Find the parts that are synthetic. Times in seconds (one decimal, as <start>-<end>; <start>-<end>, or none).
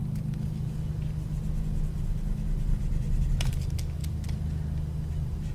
none